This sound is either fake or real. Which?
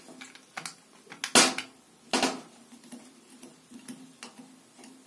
real